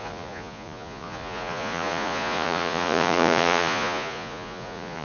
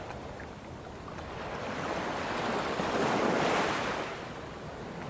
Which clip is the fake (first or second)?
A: first